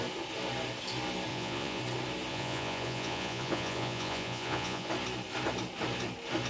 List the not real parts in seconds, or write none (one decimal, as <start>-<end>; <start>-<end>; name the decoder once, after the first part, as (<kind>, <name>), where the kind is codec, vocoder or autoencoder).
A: 1.3-1.8 (vocoder, Vocos); 2.3-4.9